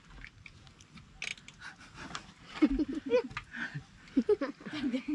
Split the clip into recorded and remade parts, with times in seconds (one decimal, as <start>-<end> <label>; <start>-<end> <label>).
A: 0.0-5.1 recorded